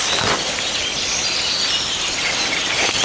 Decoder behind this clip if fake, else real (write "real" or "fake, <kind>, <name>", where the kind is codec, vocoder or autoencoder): real